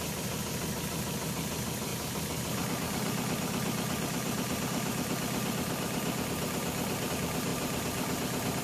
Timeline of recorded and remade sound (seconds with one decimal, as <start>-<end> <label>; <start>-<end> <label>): 0.0-8.6 recorded